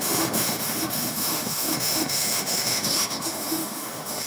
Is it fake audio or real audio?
fake